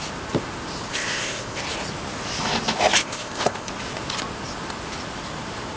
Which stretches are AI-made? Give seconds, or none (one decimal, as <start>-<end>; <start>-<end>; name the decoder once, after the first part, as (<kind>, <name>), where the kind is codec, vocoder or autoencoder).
0.9-1.6 (codec, ZipCodec); 3.0-3.7